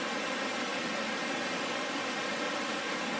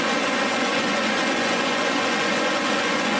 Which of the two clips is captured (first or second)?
first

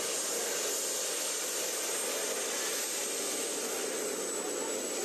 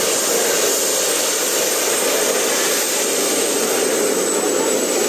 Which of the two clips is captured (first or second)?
first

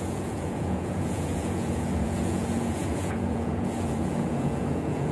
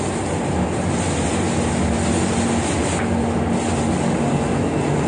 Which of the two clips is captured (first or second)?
second